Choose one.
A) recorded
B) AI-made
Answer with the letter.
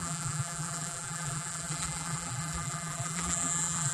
B